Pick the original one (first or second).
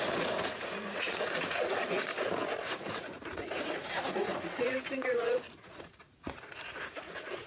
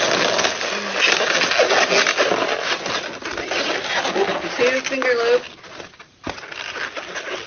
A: second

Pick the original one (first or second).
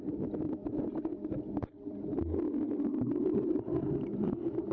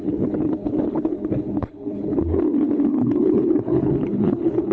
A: first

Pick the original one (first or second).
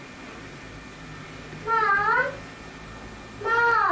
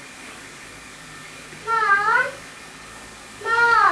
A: first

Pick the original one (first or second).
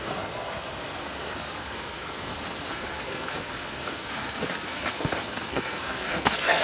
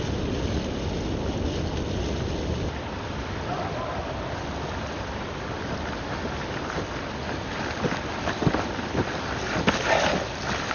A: second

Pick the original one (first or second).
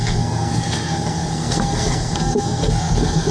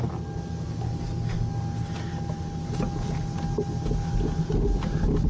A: second